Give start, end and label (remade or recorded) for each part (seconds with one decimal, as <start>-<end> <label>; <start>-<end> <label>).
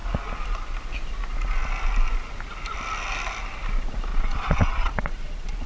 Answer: 0.0-4.1 recorded; 4.1-5.7 remade